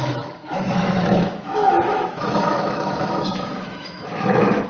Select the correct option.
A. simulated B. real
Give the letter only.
A